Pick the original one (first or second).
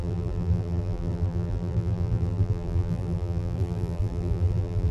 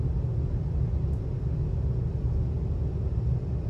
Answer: second